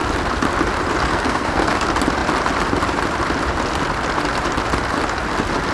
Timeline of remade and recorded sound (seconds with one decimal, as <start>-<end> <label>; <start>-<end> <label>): 0.0-1.1 recorded; 1.1-1.7 remade; 1.7-5.7 recorded

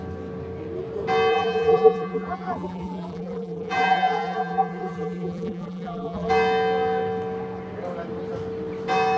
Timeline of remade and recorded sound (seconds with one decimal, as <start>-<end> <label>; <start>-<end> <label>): 0.0-1.3 recorded; 1.3-6.3 remade; 6.3-9.2 recorded

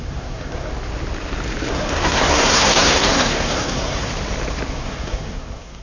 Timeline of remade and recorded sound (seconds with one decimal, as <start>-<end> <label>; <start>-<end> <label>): 0.0-0.7 remade; 0.7-1.7 recorded; 1.7-4.1 remade; 4.1-4.7 recorded; 4.7-5.8 remade

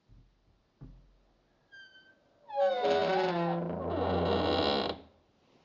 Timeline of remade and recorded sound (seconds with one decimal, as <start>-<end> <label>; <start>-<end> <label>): 0.0-5.6 recorded

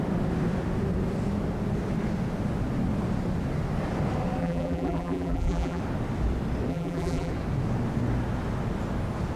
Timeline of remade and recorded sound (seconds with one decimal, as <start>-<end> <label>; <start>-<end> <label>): 0.0-4.4 recorded; 4.4-5.8 remade; 5.8-6.7 recorded; 6.7-7.3 remade; 7.3-9.4 recorded

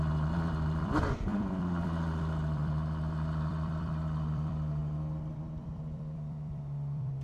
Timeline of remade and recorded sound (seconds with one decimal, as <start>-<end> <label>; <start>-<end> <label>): 0.0-4.8 remade; 4.8-5.6 recorded; 5.6-7.2 remade

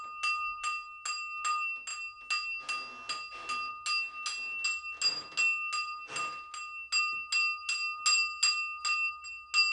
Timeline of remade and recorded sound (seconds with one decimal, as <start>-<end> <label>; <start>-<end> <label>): 0.0-9.7 recorded

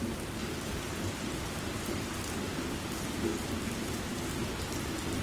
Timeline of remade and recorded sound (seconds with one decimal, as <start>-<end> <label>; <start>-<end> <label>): 0.0-0.4 recorded; 0.4-1.7 remade; 1.7-3.3 recorded; 3.3-4.2 remade; 4.2-5.2 recorded